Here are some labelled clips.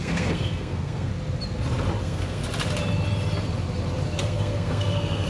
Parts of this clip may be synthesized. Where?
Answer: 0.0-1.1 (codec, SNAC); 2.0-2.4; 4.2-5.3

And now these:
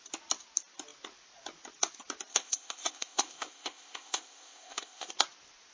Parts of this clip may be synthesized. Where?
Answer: 2.3-5.1 (codec, ZipCodec)